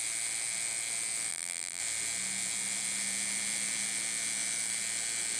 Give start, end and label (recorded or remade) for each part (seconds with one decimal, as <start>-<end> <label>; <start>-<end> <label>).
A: 0.0-1.3 recorded; 1.3-1.8 remade; 1.8-5.4 recorded